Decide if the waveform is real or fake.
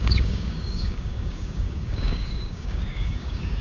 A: fake